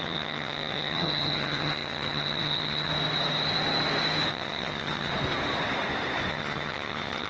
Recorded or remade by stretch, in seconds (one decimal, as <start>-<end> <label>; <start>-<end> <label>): 0.0-2.9 remade; 2.9-4.3 recorded; 4.3-5.1 remade; 5.1-6.3 recorded; 6.3-7.3 remade